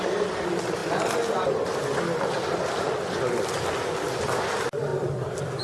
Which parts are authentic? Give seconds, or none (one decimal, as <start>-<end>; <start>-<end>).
0.0-5.6